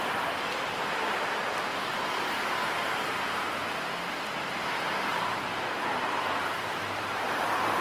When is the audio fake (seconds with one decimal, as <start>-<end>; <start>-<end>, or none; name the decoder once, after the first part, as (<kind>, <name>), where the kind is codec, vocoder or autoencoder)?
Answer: 5.1-7.3 (vocoder, BigVGAN v2)